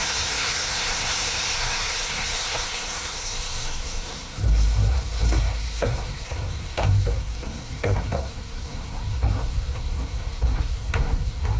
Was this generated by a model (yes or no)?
yes